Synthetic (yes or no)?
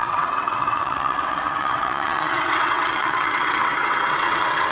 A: yes